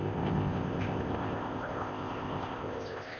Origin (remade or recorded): remade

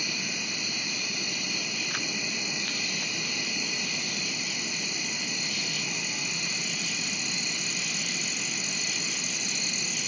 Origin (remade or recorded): recorded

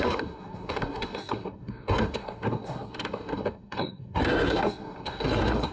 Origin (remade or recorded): remade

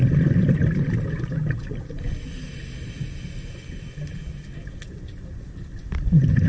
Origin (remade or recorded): recorded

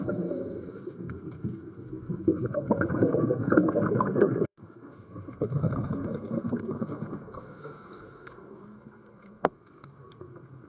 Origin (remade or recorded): remade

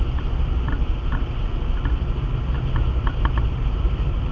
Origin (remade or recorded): recorded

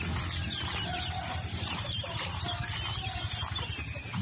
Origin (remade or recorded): recorded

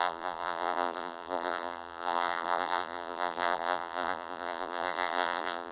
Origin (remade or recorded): remade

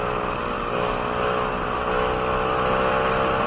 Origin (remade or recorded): recorded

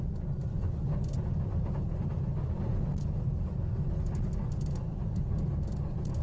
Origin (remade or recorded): recorded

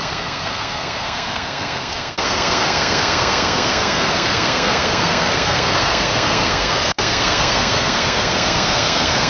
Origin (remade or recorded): remade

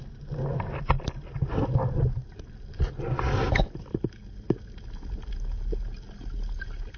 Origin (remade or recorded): recorded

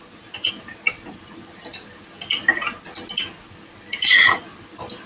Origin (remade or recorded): recorded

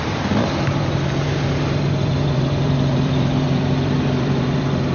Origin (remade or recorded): remade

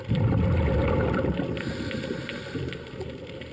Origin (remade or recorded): recorded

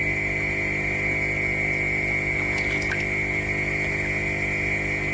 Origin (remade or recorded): recorded